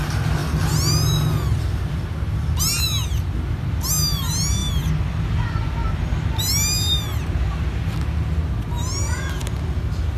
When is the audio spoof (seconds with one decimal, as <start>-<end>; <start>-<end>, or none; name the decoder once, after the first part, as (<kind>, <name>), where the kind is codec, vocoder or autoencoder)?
none